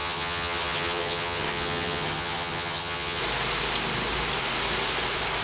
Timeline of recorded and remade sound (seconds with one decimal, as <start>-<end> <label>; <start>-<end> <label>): 0.0-3.2 remade; 3.2-5.4 recorded